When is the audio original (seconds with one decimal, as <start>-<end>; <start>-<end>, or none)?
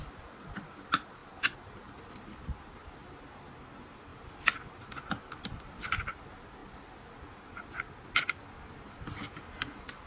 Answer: 0.0-10.1